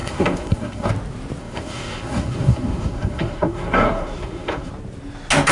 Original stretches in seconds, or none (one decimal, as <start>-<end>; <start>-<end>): 0.9-1.4; 4.7-5.5